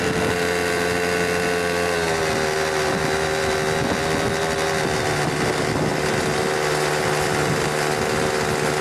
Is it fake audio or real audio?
real